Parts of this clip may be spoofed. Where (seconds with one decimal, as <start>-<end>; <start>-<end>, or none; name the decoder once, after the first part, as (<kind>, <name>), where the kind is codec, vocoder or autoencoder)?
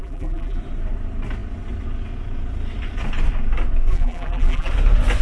0.0-0.6 (vocoder, BigVGAN v2); 3.9-4.7